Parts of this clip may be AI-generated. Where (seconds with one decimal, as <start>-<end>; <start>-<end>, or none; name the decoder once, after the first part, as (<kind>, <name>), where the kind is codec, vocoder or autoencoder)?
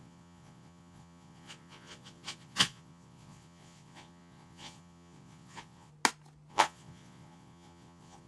0.0-5.9 (vocoder, Vocos); 6.5-8.3